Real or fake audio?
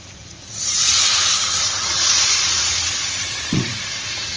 fake